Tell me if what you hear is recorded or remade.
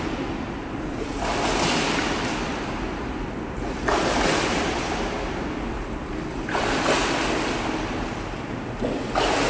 recorded